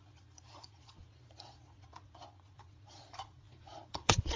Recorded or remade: remade